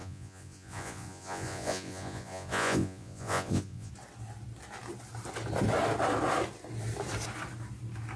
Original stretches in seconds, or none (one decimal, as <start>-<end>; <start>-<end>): 3.9-8.2